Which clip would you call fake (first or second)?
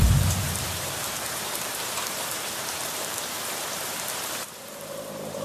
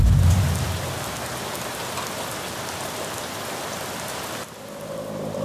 first